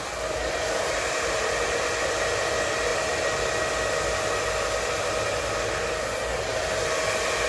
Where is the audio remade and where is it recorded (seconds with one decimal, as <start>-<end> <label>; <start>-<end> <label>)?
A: 0.0-7.5 recorded